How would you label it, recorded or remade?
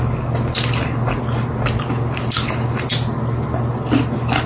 recorded